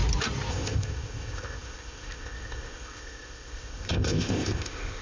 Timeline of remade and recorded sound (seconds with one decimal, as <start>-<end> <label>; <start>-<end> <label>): 0.0-0.5 recorded; 0.5-5.0 remade